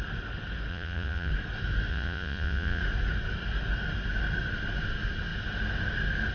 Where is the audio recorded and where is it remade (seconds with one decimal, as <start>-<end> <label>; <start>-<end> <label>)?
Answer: 0.0-0.7 recorded; 0.7-1.3 remade; 1.3-1.9 recorded; 1.9-2.8 remade; 2.8-6.3 recorded